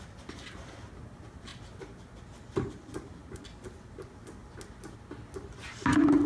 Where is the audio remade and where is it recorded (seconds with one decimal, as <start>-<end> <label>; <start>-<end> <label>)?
0.0-6.3 recorded